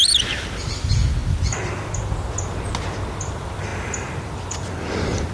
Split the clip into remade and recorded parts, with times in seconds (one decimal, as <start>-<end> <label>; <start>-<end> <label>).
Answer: 0.0-5.3 recorded